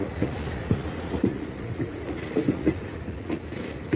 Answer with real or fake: fake